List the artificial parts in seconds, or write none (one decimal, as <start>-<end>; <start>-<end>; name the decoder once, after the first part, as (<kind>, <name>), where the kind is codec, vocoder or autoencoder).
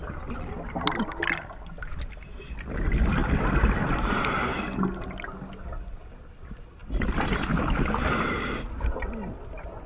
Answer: none